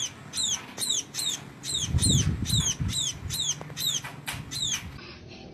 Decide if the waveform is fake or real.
real